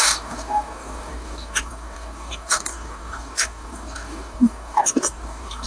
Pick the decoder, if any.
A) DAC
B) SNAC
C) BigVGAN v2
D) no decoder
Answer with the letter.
A